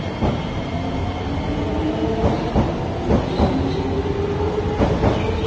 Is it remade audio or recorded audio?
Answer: recorded